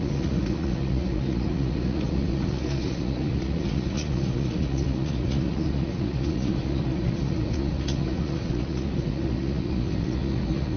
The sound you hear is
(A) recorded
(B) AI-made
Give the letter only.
B